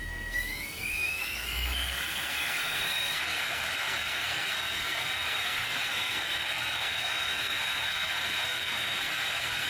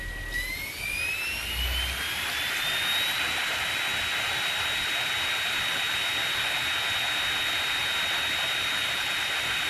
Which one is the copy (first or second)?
first